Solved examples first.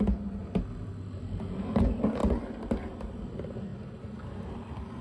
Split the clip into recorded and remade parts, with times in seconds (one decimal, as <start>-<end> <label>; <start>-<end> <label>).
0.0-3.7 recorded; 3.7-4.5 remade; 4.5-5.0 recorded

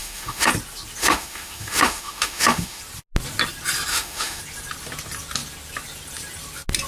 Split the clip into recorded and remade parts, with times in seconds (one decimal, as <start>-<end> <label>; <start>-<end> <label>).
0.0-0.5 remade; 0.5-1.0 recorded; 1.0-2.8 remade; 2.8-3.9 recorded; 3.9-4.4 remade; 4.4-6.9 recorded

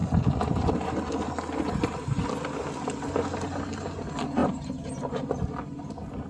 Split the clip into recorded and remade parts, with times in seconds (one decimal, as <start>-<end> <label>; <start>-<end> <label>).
0.0-6.3 recorded

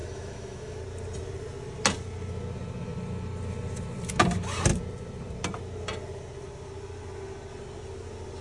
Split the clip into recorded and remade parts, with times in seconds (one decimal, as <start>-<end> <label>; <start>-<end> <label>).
0.0-0.8 remade; 0.8-8.4 recorded

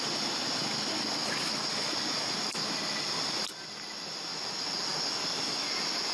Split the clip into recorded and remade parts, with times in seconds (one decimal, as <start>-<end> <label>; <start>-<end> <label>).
0.0-6.1 recorded

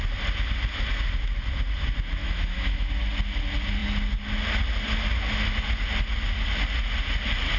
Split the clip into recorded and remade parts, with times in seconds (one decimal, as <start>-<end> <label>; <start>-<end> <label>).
0.0-2.2 recorded; 2.2-2.9 remade; 2.9-7.6 recorded